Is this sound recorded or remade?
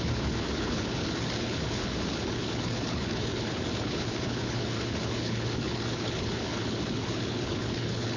remade